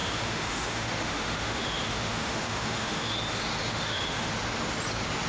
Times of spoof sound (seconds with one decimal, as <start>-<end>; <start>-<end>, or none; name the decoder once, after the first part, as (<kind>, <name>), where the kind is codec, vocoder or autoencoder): 0.0-3.2 (autoencoder, DAC-VAE); 3.7-4.3